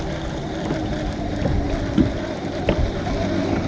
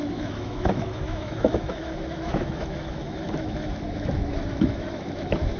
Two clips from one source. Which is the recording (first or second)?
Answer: first